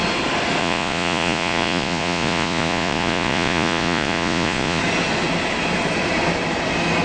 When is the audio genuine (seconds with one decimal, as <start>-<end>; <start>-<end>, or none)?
0.0-0.6; 4.8-7.0